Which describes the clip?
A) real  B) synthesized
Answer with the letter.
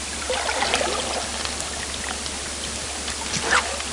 A